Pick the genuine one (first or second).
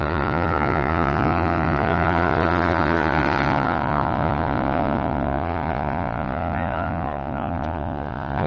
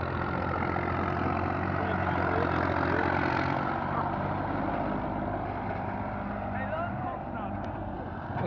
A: second